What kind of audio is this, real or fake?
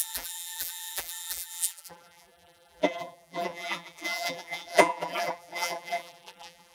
fake